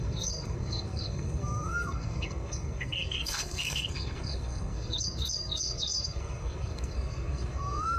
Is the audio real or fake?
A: fake